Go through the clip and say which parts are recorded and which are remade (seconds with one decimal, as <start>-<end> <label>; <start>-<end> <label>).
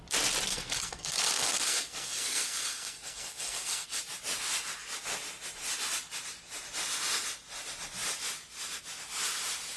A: 0.0-0.5 recorded; 0.5-4.0 remade; 4.0-9.8 recorded